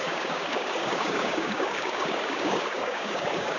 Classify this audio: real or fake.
fake